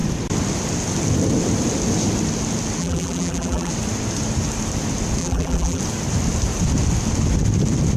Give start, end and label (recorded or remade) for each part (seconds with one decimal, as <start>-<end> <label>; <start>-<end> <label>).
0.0-2.8 recorded; 2.8-3.7 remade; 3.7-5.2 recorded; 5.2-5.8 remade; 5.8-8.0 recorded